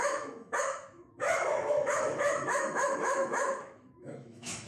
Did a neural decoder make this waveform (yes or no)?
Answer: yes